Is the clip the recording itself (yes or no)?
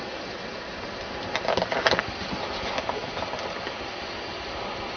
yes